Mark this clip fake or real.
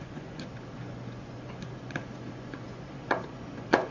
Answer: fake